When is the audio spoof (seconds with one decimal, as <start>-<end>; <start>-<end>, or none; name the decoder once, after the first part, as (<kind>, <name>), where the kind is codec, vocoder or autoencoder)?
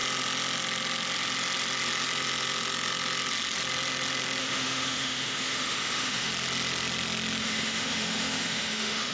4.4-6.3 (autoencoder, DAC-VAE); 7.4-9.1